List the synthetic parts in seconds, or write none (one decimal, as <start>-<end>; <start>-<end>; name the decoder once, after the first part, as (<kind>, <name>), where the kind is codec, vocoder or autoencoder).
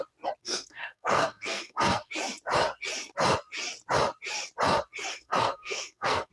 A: 0.4-2.1 (codec, SNAC); 5.1-6.3